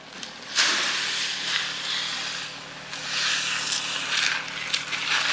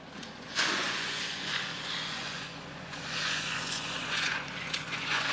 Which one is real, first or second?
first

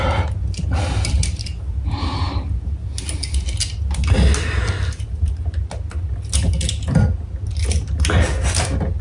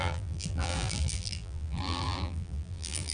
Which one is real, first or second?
first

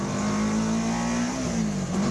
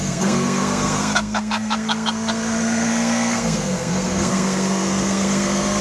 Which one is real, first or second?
first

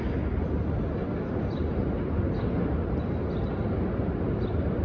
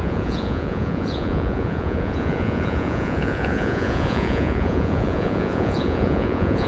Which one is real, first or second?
first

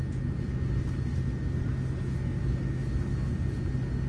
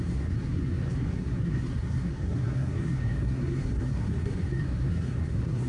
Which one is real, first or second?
first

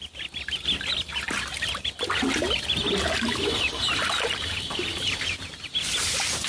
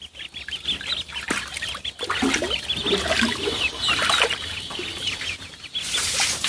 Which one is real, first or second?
second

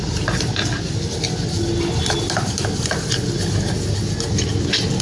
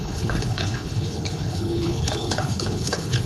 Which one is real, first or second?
first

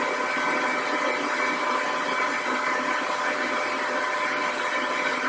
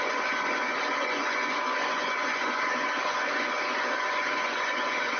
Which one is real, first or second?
first